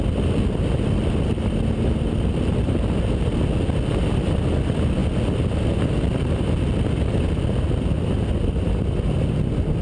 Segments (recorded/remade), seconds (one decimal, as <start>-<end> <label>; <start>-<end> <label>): 0.0-9.8 recorded